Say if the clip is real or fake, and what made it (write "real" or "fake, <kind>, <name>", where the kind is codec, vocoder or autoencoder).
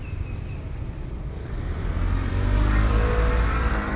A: fake, vocoder, BigVGAN v2